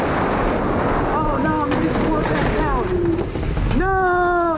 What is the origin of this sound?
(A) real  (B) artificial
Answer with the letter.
A